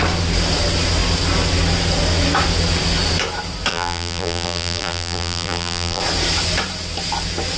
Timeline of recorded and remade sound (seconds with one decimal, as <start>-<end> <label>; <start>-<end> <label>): 0.0-3.7 recorded; 3.7-6.0 remade; 6.0-7.6 recorded